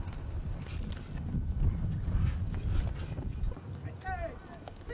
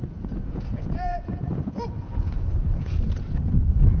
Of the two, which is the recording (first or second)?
first